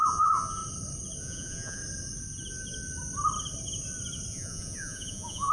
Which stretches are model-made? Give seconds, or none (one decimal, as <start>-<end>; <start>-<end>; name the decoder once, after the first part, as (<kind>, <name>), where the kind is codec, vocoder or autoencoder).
0.0-0.6 (vocoder, Vocos); 1.2-1.8; 4.3-5.5